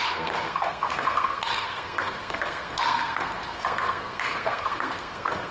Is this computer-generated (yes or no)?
yes